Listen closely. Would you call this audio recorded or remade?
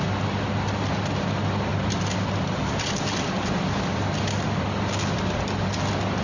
recorded